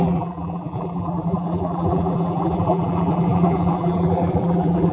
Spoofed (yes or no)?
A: yes